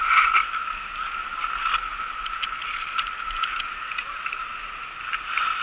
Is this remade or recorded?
recorded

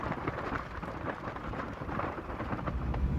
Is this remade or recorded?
remade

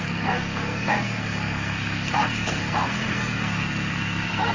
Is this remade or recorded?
remade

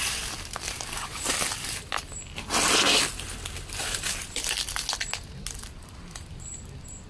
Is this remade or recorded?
recorded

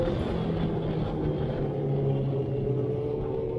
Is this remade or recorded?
recorded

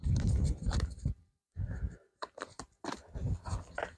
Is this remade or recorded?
remade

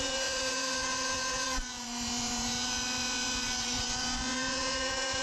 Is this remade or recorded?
remade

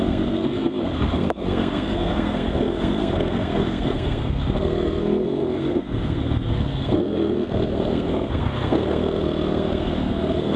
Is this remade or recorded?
remade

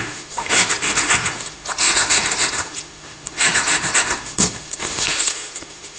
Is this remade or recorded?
remade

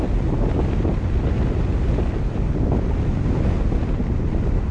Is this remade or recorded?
recorded